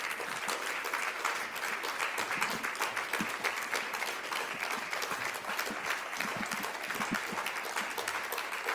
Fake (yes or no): no